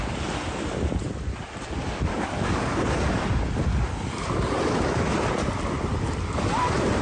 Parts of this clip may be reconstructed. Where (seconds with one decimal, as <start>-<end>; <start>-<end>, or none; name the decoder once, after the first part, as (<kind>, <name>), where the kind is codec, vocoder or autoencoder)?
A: 2.1-3.2 (codec, DAC)